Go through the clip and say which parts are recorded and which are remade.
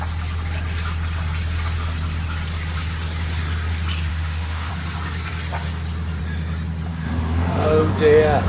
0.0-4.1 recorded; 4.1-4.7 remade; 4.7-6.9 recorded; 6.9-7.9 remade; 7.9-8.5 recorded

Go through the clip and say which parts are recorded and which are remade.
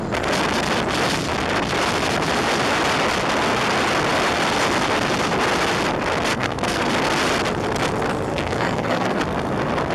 0.0-6.3 recorded; 6.3-6.9 remade; 6.9-8.3 recorded; 8.3-9.2 remade; 9.2-9.9 recorded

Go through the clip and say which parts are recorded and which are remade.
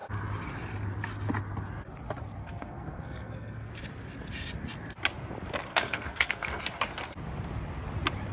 0.0-2.4 recorded; 2.4-3.7 remade; 3.7-5.7 recorded; 5.7-6.6 remade; 6.6-8.3 recorded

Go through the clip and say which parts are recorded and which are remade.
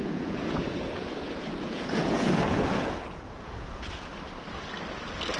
0.0-4.1 remade; 4.1-5.4 recorded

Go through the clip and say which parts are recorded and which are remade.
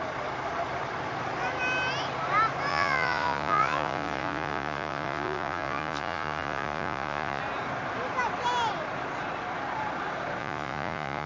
0.0-2.7 recorded; 2.7-7.4 remade; 7.4-10.4 recorded; 10.4-11.3 remade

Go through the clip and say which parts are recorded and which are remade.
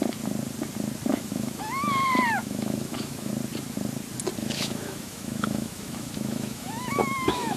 0.0-1.1 recorded; 1.1-1.6 remade; 1.6-2.4 recorded; 2.4-3.3 remade; 3.3-4.4 recorded; 4.4-7.6 remade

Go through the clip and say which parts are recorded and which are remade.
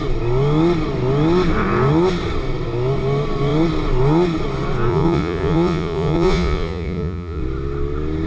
0.0-4.9 recorded; 4.9-7.4 remade; 7.4-8.3 recorded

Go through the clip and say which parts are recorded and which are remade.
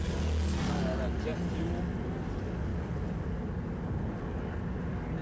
0.0-5.2 recorded